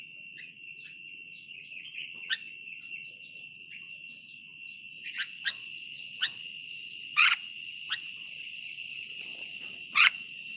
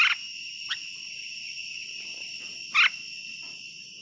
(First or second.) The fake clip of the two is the first